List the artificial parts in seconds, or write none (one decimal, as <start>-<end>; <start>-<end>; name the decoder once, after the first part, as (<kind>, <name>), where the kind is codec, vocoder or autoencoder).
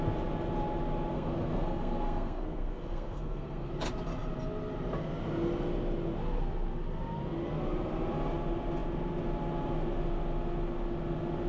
1.1-3.7 (codec, SNAC)